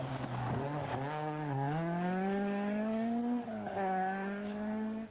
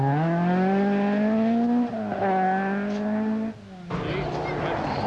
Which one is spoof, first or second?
first